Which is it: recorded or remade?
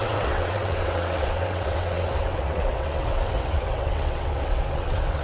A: remade